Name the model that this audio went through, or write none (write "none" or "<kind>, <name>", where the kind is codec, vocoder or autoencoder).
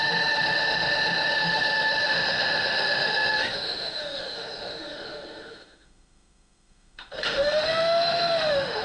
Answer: autoencoder, DAC-VAE